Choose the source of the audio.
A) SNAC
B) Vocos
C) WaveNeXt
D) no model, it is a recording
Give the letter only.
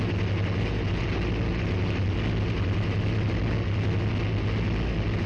D